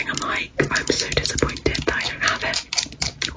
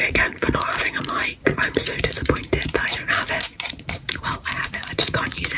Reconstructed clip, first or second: second